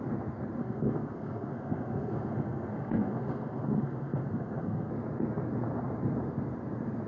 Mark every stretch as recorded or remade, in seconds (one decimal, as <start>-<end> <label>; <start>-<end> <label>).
0.0-0.6 recorded; 0.6-4.9 remade; 4.9-7.1 recorded